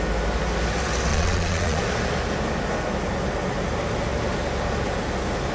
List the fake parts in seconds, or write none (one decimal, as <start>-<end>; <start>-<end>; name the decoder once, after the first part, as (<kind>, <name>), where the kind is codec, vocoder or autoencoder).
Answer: 1.1-1.8 (vocoder, Vocos)